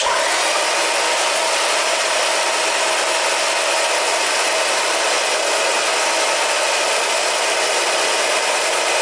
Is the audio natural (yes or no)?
yes